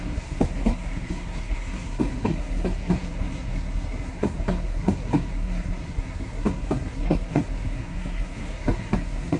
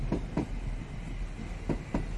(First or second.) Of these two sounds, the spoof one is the first